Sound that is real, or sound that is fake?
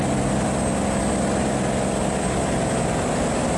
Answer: real